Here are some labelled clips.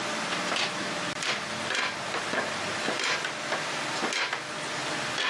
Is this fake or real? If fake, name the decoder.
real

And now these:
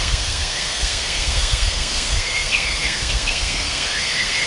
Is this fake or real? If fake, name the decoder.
fake, codec, SNAC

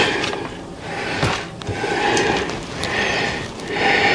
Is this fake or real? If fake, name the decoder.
real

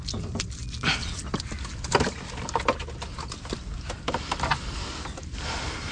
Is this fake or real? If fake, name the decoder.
real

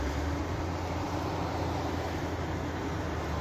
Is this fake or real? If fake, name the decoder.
real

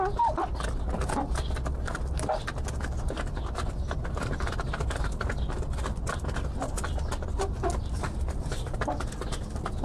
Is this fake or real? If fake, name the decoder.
real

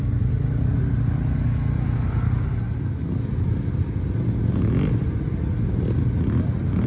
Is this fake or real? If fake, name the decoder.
real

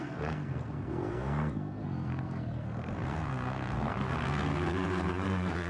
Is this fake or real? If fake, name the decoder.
fake, codec, SNAC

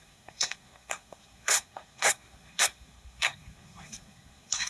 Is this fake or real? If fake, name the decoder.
fake, codec, SNAC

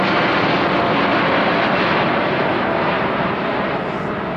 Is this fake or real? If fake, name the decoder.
real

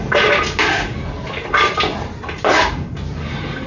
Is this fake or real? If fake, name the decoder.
real